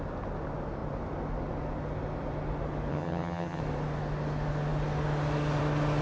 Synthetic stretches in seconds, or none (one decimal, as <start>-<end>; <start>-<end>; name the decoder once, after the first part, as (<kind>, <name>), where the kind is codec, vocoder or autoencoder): 2.9-3.6 (vocoder, HiFi-GAN)